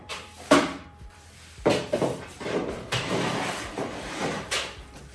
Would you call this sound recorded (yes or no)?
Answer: no